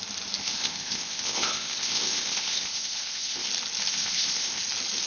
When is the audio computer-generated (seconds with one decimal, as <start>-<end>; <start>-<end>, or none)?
0.4-3.5; 3.9-4.6